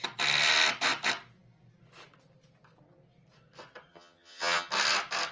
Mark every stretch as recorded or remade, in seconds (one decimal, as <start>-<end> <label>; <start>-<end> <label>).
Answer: 0.0-3.9 recorded; 3.9-4.7 remade; 4.7-5.3 recorded

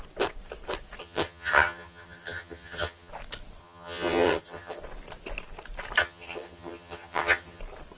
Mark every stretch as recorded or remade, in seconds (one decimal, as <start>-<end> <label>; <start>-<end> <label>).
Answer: 0.0-1.0 recorded; 1.0-3.1 remade; 3.1-3.6 recorded; 3.6-4.8 remade; 4.8-6.0 recorded; 6.0-7.6 remade; 7.6-8.0 recorded

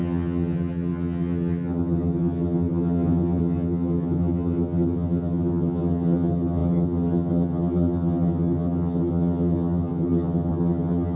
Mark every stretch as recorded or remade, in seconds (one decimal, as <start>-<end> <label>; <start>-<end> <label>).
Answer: 0.0-11.2 remade

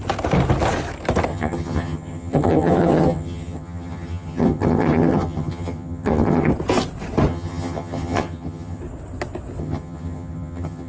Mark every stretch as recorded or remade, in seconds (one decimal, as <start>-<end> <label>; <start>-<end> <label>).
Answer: 0.0-1.3 recorded; 1.3-6.5 remade; 6.5-7.3 recorded; 7.3-8.8 remade; 8.8-9.6 recorded; 9.6-10.9 remade

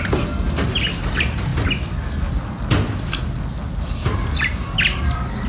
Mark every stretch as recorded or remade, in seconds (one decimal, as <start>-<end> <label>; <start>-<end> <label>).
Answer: 0.0-5.5 recorded

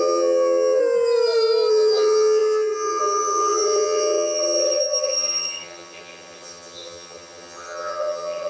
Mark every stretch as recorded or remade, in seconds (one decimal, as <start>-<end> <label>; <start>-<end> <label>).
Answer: 0.0-0.8 remade; 0.8-1.7 recorded; 1.7-8.5 remade